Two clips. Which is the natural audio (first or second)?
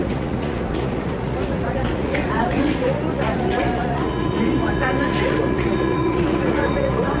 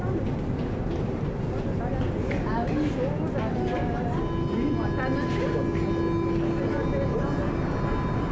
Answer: second